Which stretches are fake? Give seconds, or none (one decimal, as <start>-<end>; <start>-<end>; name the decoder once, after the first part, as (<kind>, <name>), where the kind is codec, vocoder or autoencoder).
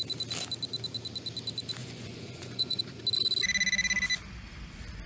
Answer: 1.8-2.8 (vocoder, Vocos)